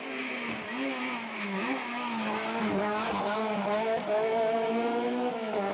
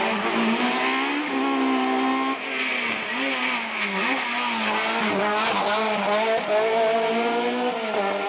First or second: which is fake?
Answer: first